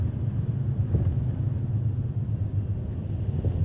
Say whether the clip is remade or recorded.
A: recorded